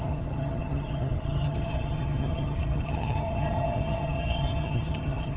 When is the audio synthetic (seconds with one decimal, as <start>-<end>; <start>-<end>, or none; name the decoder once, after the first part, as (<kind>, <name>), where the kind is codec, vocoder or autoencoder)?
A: 0.0-5.4 (vocoder, HiFi-GAN)